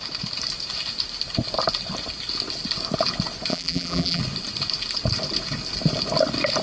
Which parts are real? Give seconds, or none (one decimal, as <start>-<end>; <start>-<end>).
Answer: 0.0-3.5; 4.2-6.6